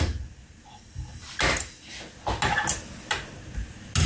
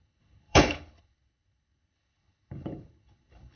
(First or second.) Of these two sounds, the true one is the first